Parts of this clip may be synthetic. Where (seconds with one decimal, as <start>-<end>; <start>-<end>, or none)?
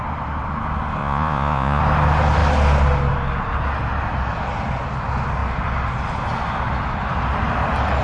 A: 1.0-1.8